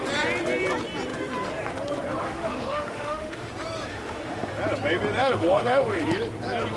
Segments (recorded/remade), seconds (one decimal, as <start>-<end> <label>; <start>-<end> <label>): 0.0-2.2 recorded; 2.2-3.5 remade; 3.5-3.9 recorded; 3.9-4.5 remade; 4.5-5.2 recorded; 5.2-6.0 remade; 6.0-6.8 recorded